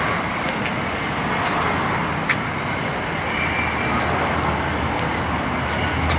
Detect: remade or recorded recorded